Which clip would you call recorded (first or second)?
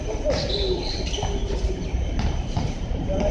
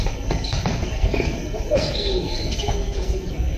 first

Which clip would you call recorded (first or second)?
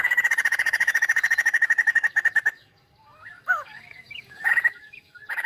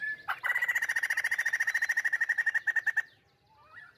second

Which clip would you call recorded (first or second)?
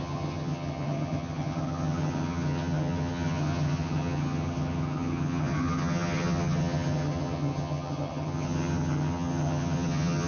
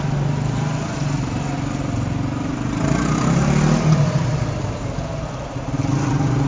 second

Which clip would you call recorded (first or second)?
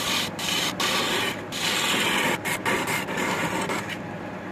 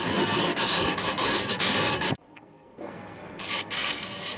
first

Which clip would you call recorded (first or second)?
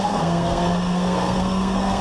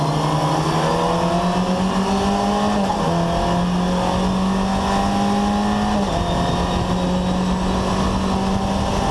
second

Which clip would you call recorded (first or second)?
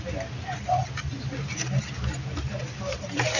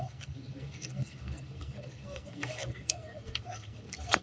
first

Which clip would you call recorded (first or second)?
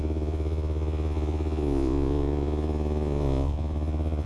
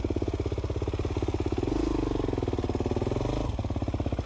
second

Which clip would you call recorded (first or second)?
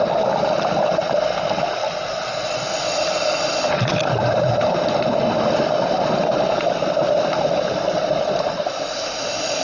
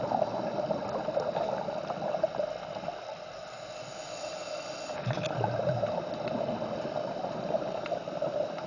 second